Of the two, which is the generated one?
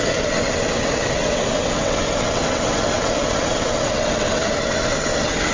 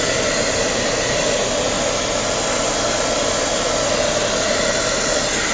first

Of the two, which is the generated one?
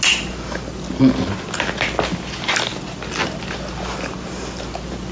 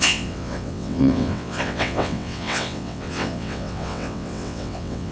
second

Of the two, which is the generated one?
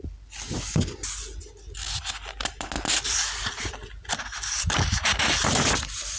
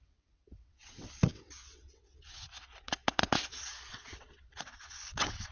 second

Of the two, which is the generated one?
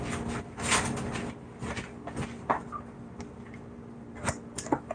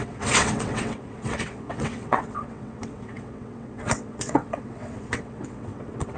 second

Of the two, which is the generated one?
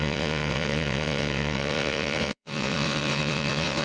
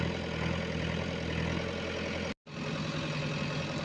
first